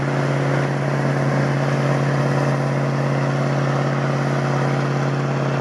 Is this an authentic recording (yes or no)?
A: yes